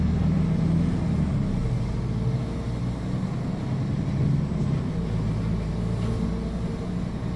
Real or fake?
real